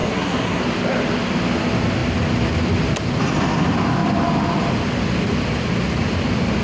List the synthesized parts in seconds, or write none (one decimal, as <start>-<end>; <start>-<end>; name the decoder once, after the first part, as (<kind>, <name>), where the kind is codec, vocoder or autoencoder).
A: 0.0-0.6 (codec, SNAC)